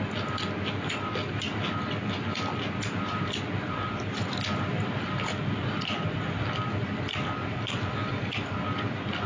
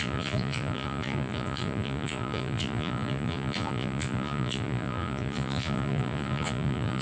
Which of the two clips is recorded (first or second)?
first